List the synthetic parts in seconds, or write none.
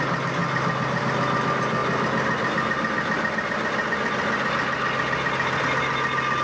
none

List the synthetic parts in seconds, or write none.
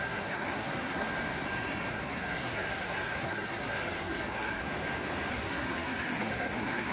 0.0-1.1 (codec, SNAC); 1.9-4.6; 5.3-6.9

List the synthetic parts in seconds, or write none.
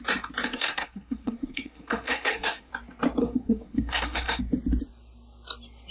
0.5-2.7 (codec, SNAC); 3.2-4.4